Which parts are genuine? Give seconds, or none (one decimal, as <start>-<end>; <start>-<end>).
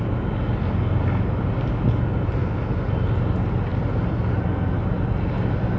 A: 0.0-5.8